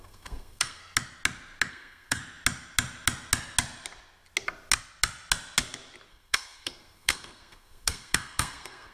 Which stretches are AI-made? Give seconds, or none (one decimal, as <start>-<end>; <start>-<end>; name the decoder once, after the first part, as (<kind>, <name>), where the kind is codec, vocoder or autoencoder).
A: 0.0-0.8 (codec, SNAC); 1.7-2.2; 6.1-8.9